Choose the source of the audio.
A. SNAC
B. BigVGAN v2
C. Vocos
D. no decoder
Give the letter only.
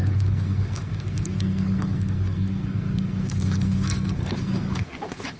A